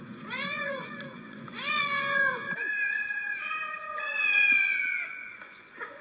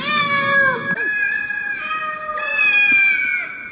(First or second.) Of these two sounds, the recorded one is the second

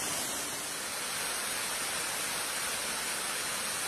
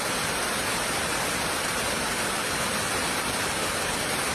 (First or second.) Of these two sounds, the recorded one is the first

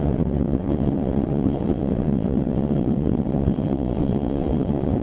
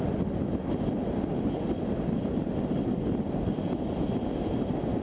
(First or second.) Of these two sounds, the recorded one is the second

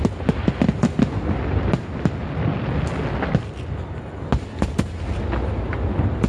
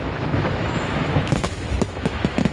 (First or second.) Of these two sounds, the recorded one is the first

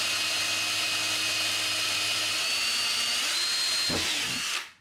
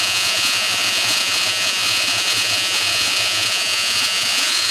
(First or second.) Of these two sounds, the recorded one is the first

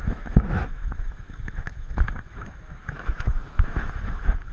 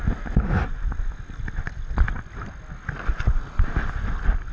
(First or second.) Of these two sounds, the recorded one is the second